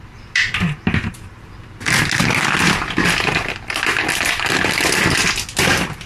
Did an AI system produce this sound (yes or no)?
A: no